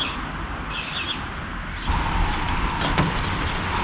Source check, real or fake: real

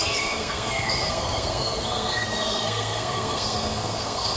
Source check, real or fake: fake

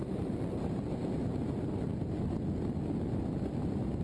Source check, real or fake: real